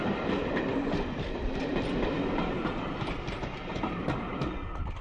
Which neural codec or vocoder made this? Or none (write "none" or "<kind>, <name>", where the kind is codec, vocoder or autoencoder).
none